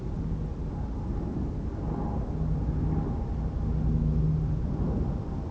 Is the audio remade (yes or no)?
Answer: no